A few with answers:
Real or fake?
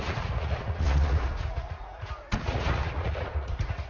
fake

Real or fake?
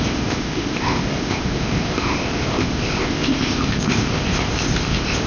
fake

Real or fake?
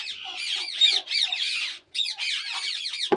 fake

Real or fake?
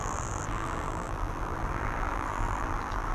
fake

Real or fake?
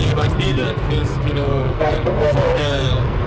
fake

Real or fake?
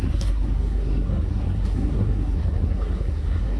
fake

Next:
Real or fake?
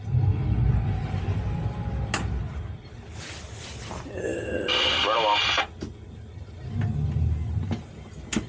real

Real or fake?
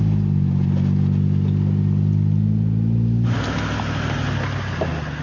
real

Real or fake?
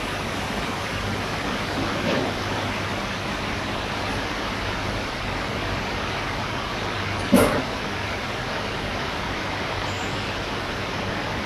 fake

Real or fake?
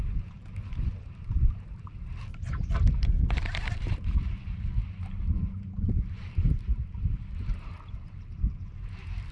fake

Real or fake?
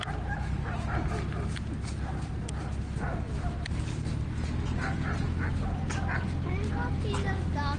real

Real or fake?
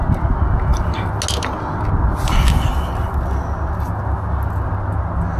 real